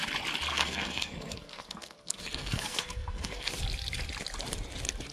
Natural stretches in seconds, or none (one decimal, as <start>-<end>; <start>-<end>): 0.0-0.5; 3.5-5.1